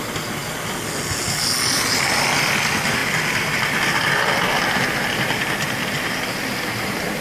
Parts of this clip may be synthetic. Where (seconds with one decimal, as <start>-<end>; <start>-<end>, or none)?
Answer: none